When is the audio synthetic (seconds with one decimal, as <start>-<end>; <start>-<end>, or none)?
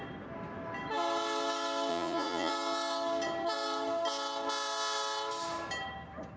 1.9-2.5